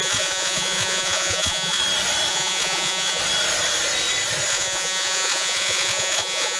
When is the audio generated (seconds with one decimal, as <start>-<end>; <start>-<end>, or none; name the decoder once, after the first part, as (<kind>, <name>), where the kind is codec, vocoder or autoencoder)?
0.0-1.8 (vocoder, Vocos); 2.3-3.2; 4.5-6.6

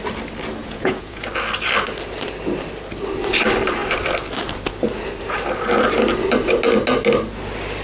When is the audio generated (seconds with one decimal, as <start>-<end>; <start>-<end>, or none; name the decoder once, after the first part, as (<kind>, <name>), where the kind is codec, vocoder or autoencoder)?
0.6-1.2 (vocoder, Vocos)

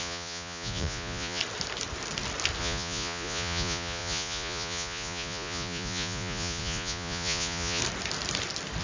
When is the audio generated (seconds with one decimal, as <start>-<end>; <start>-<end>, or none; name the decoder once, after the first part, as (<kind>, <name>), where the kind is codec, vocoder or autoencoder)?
0.0-1.4 (vocoder, Vocos); 2.6-7.8

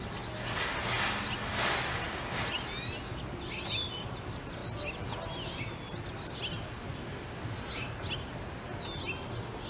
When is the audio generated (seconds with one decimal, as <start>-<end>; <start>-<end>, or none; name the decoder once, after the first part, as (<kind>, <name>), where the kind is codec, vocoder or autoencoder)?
none

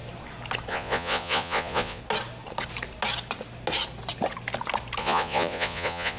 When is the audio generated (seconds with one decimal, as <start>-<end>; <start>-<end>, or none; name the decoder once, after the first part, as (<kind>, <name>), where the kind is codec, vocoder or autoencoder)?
0.7-2.0 (vocoder, Vocos); 5.0-6.2

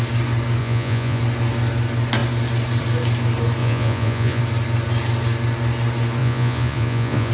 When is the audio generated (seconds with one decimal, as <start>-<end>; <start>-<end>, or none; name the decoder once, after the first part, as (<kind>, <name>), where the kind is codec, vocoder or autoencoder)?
0.6-1.2 (vocoder, Vocos); 3.6-4.4; 6.2-7.3

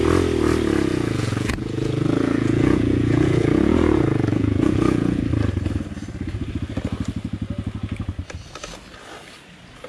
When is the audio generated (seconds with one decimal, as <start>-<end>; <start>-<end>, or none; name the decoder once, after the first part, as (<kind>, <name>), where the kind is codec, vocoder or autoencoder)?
0.9-5.2 (vocoder, Vocos)

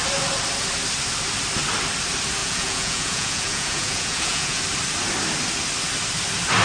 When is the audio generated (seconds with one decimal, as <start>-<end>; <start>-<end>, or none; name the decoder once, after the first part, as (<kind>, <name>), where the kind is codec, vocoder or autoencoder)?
2.4-4.6 (vocoder, Vocos)